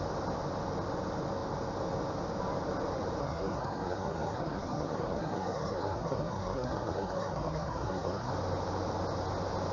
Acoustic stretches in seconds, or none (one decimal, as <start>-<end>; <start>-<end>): 0.0-3.2; 8.3-9.7